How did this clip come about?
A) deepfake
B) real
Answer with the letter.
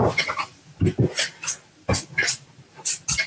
B